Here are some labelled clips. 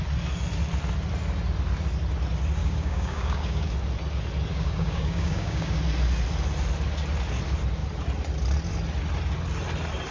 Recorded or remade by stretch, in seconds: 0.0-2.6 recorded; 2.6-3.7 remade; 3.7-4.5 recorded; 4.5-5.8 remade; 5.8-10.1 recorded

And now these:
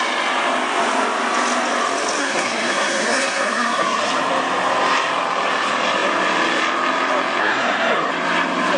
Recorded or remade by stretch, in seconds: 0.0-2.2 recorded; 2.2-4.0 remade; 4.0-7.4 recorded; 7.4-8.1 remade; 8.1-8.8 recorded

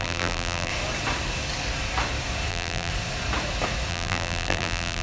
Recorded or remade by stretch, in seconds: 0.0-0.7 remade; 0.7-2.5 recorded; 2.5-2.9 remade; 2.9-3.9 recorded; 3.9-5.0 remade

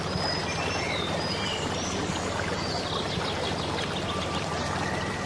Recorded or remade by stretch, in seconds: 0.0-5.3 recorded

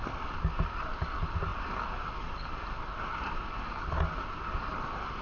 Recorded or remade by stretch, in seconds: 0.0-5.2 recorded

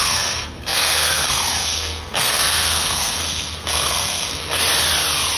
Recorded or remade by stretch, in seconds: 0.0-4.6 remade; 4.6-5.4 recorded